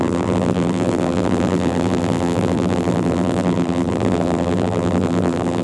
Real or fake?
fake